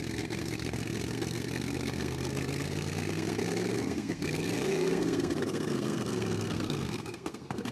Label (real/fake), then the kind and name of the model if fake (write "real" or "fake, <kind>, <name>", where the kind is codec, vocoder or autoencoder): fake, codec, SNAC